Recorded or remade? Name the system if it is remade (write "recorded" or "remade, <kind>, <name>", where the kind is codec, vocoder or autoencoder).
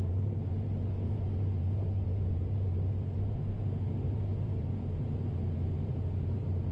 remade, vocoder, BigVGAN v2